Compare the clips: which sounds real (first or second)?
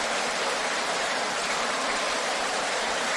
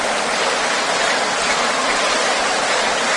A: second